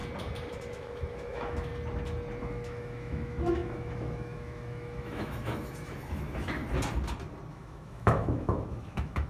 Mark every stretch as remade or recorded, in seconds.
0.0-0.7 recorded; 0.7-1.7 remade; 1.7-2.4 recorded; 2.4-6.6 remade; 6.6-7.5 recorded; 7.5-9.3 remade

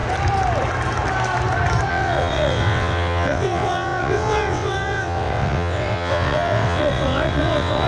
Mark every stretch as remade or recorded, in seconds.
0.0-1.9 recorded; 1.9-7.9 remade

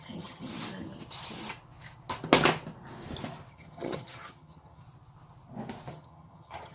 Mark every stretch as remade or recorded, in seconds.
0.0-0.5 remade; 0.5-3.5 recorded; 3.5-4.8 remade; 4.8-5.9 recorded; 5.9-6.7 remade

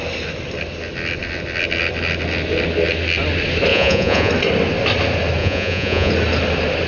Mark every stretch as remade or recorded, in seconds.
0.0-3.7 recorded; 3.7-4.3 remade; 4.3-5.4 recorded; 5.4-6.1 remade; 6.1-6.9 recorded

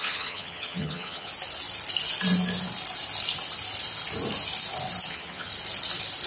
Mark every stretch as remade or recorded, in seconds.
0.0-1.3 remade; 1.3-5.1 recorded; 5.1-5.5 remade; 5.5-6.3 recorded

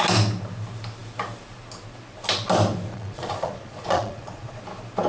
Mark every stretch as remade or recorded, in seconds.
0.0-2.9 recorded; 2.9-4.6 remade; 4.6-5.1 recorded